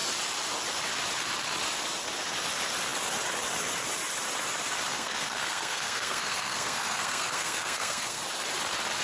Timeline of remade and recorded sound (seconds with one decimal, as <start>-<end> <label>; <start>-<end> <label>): 0.0-4.9 recorded; 4.9-8.2 remade; 8.2-9.0 recorded